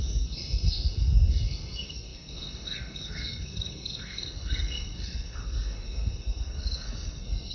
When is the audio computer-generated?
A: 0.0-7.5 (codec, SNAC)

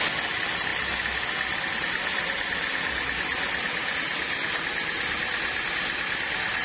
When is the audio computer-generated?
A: none

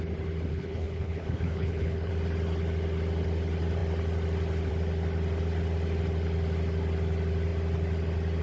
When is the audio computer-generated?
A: 0.5-2.1 (codec, HILCodec)

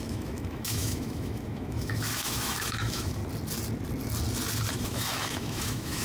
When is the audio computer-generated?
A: 0.0-3.2 (autoencoder, DAC-VAE); 4.7-6.0

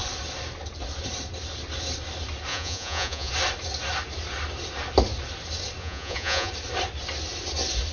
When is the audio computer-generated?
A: 2.5-3.3 (vocoder, Vocos); 5.8-6.5

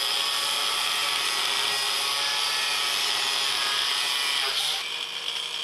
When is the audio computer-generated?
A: none